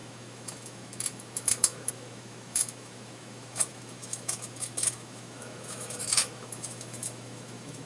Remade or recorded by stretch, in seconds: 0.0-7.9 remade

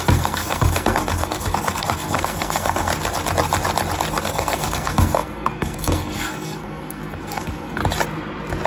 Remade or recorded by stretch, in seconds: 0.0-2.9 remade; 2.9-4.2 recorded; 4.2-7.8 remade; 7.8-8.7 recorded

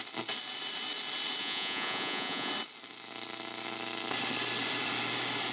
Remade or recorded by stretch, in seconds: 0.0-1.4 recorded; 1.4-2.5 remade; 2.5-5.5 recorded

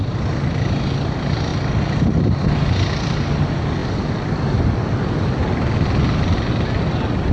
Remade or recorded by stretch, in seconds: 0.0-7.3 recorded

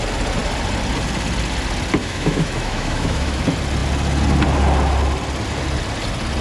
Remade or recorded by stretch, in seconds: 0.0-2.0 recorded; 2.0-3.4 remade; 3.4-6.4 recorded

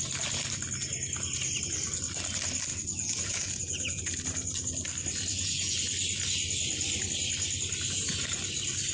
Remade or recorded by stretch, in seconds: 0.0-2.7 recorded; 2.7-4.0 remade; 4.0-5.3 recorded; 5.3-5.8 remade; 5.8-8.9 recorded